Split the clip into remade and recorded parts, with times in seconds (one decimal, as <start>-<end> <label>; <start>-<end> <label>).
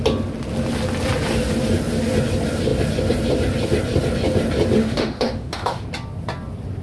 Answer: 0.0-4.8 recorded; 4.8-5.8 remade; 5.8-6.8 recorded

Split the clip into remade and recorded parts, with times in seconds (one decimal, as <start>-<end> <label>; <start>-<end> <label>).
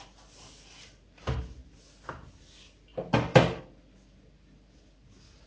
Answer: 0.0-5.5 recorded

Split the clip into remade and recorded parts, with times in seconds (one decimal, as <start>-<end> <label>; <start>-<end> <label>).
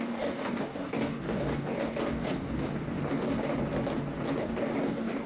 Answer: 0.0-3.4 remade; 3.4-4.4 recorded; 4.4-5.3 remade